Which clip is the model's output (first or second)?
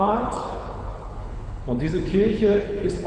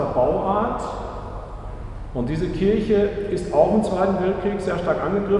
first